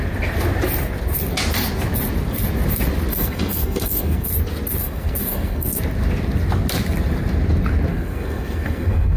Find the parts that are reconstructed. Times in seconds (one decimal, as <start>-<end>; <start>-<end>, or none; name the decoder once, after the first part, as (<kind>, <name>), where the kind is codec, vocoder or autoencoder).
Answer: 3.1-4.3 (codec, SNAC); 4.8-5.8; 7.9-9.2